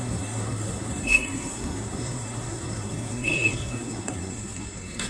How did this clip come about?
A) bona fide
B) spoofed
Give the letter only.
B